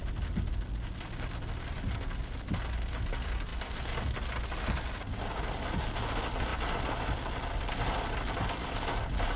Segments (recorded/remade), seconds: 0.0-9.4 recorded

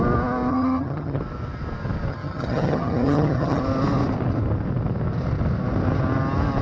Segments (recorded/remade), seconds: 0.0-0.5 recorded; 0.5-1.2 remade; 1.2-2.1 recorded; 2.1-3.6 remade; 3.6-6.6 recorded

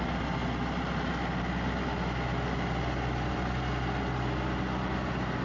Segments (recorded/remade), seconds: 0.0-5.4 recorded

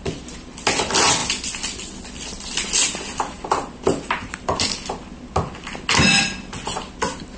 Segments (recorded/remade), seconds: 0.0-7.4 recorded

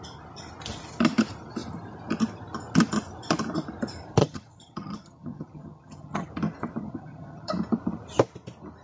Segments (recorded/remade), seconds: 0.0-4.2 recorded; 4.2-6.3 remade; 6.3-6.8 recorded; 6.8-7.5 remade; 7.5-8.8 recorded